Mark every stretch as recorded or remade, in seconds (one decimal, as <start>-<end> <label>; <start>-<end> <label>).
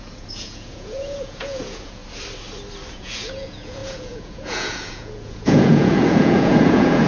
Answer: 0.0-2.0 remade; 2.0-2.9 recorded; 2.9-7.1 remade